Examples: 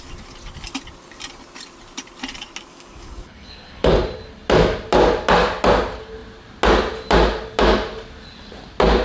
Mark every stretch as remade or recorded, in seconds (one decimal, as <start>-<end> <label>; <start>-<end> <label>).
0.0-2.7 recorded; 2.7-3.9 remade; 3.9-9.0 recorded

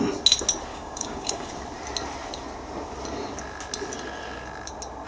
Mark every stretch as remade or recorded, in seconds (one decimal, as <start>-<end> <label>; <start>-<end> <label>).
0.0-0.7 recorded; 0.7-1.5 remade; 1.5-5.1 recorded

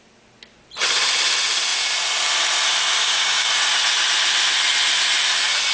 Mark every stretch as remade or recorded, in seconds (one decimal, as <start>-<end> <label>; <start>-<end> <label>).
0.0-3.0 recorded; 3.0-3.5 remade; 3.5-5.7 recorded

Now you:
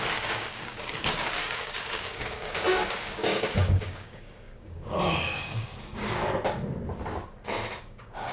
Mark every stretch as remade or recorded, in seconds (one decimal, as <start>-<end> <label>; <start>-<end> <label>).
0.0-6.2 remade; 6.2-7.8 recorded; 7.8-8.3 remade

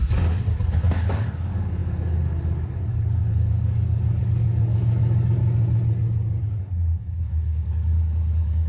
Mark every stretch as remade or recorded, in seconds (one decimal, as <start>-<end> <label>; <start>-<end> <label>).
0.0-5.4 remade; 5.4-6.4 recorded; 6.4-8.7 remade

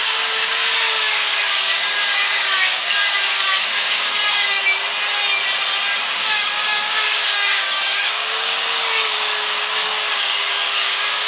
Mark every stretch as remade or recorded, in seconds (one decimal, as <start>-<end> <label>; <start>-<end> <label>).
0.0-4.6 remade; 4.6-6.0 recorded; 6.0-11.3 remade